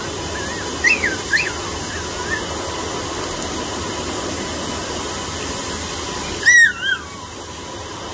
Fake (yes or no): no